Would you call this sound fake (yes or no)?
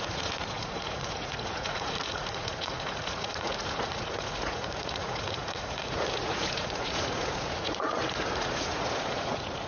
yes